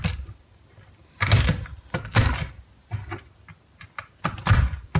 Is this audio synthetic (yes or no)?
no